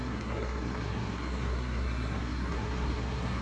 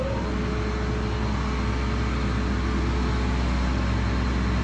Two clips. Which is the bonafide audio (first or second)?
second